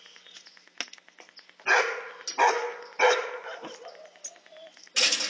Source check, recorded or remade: recorded